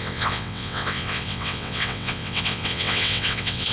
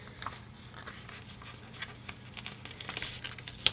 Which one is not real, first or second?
first